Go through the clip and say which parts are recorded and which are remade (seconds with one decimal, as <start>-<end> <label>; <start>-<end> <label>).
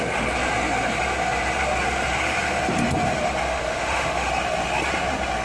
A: 0.0-3.4 recorded; 3.4-4.3 remade; 4.3-5.4 recorded